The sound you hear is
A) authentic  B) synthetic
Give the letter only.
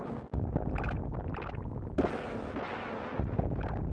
A